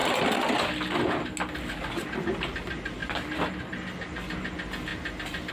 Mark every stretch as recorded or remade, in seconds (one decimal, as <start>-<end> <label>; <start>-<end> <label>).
0.0-1.1 remade; 1.1-5.5 recorded